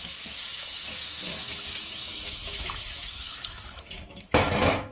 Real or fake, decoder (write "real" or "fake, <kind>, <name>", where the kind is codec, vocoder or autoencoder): fake, autoencoder, DAC-VAE